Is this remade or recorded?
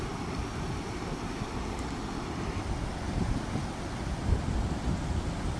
recorded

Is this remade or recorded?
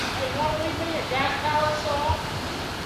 recorded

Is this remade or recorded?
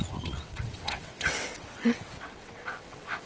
remade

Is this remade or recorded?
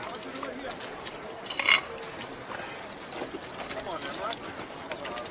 recorded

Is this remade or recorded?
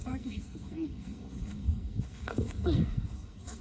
remade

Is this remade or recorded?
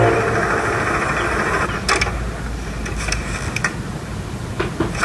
recorded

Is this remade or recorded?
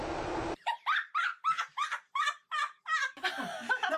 recorded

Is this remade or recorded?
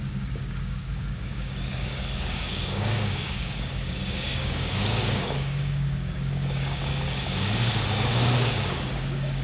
remade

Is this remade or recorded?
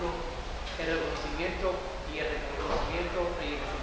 recorded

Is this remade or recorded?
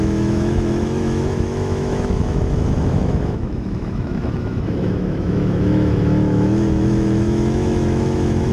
remade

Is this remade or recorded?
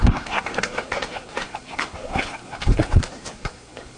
remade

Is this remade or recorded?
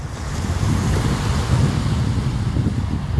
recorded